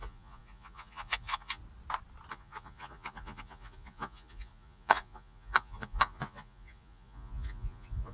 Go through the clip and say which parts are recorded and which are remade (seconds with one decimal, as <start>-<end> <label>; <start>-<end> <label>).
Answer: 0.0-1.6 remade; 1.6-2.3 recorded; 2.3-8.1 remade